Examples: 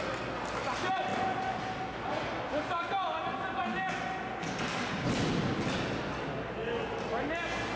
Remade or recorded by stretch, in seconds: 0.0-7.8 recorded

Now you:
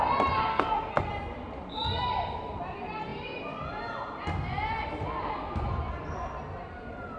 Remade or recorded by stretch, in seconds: 0.0-0.5 recorded; 0.5-1.1 remade; 1.1-7.2 recorded

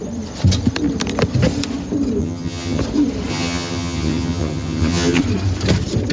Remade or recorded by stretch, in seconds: 0.0-2.2 recorded; 2.2-2.8 remade; 2.8-3.3 recorded; 3.3-5.2 remade; 5.2-6.1 recorded

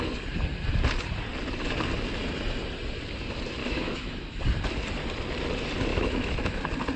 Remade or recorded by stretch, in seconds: 0.0-3.6 recorded; 3.6-4.4 remade; 4.4-5.9 recorded; 5.9-6.6 remade; 6.6-7.0 recorded

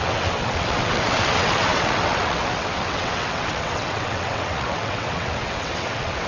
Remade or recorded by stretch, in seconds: 0.0-6.3 remade

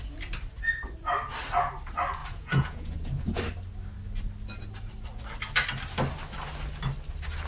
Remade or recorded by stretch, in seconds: 0.0-2.2 recorded; 2.2-3.4 remade; 3.4-7.5 recorded

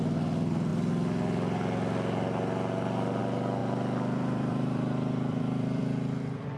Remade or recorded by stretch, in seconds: 0.0-3.6 recorded; 3.6-5.8 remade; 5.8-6.6 recorded

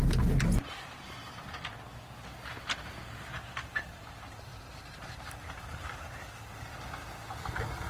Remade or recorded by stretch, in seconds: 0.0-4.5 recorded; 4.5-5.6 remade; 5.6-7.9 recorded